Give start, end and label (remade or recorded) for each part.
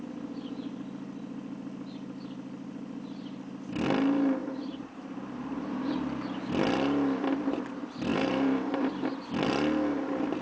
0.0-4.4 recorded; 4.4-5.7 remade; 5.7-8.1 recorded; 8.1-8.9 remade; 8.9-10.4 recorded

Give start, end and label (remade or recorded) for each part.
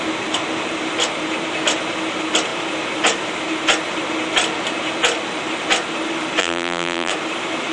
0.0-6.4 recorded; 6.4-7.1 remade; 7.1-7.7 recorded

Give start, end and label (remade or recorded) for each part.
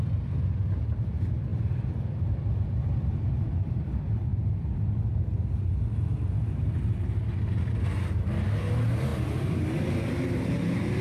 0.0-1.5 recorded; 1.5-3.8 remade; 3.8-4.3 recorded; 4.3-5.0 remade; 5.0-9.1 recorded; 9.1-9.6 remade; 9.6-11.0 recorded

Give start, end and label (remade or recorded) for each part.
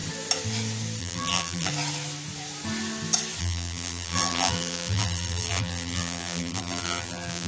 0.0-1.0 recorded; 1.0-1.7 remade; 1.7-3.4 recorded; 3.4-7.5 remade